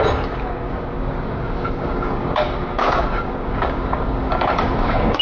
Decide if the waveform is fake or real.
fake